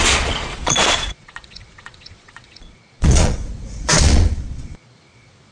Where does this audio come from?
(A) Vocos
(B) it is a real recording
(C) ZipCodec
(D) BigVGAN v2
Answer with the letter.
A